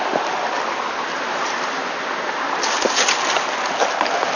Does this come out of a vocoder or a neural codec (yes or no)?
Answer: no